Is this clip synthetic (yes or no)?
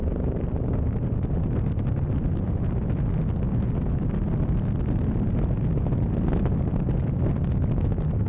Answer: no